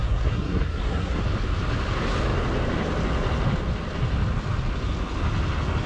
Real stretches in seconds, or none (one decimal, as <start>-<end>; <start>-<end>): 1.2-5.9